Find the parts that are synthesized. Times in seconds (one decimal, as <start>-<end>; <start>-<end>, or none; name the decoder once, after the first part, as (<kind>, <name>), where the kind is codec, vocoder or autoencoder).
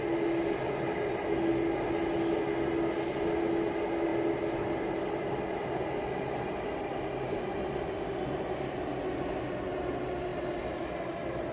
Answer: none